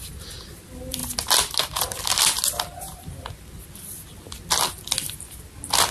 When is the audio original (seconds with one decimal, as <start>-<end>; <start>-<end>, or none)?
0.0-5.9